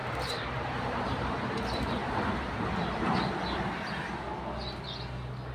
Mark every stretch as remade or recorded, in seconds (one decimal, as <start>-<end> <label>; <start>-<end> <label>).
0.0-1.3 remade; 1.3-5.5 recorded